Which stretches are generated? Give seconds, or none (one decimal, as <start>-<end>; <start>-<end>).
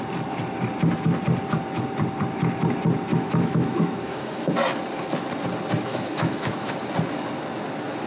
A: 3.1-4.5; 5.9-6.7